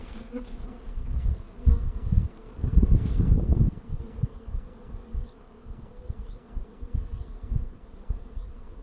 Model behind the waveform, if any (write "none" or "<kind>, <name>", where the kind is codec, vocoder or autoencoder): codec, SNAC